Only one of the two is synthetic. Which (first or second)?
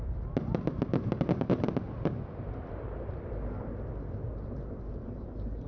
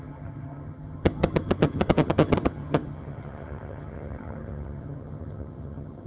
second